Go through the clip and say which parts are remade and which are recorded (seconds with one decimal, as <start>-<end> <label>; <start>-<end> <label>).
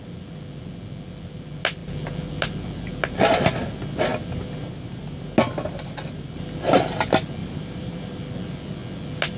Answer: 0.0-7.4 recorded; 7.4-8.2 remade; 8.2-9.4 recorded